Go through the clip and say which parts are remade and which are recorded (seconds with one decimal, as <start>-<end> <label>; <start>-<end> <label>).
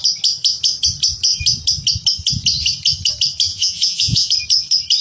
0.0-3.5 recorded; 3.5-4.3 remade; 4.3-5.0 recorded